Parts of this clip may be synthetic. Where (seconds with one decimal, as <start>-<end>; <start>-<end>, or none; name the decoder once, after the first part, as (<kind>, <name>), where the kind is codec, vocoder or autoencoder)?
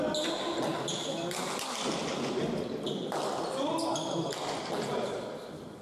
none